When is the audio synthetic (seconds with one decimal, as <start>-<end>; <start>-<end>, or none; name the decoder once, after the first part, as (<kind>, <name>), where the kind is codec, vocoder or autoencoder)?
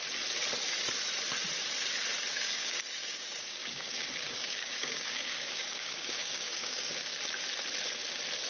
2.3-7.2 (codec, DAC)